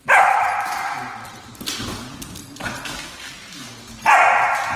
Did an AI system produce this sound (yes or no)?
no